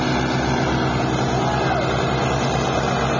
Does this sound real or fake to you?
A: real